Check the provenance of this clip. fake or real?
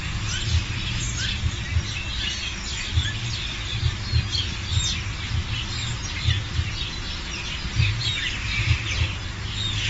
real